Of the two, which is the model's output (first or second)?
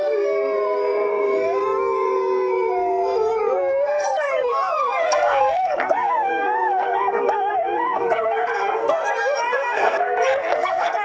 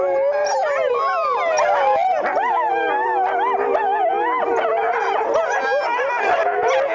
first